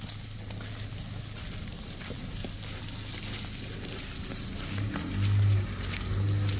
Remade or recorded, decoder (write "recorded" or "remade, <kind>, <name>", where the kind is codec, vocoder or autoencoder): recorded